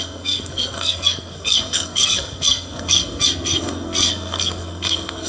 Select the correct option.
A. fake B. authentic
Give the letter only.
A